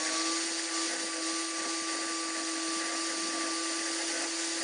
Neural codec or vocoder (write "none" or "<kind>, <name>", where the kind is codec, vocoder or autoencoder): none